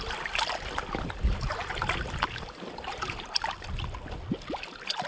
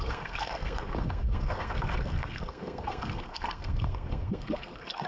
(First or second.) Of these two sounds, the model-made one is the second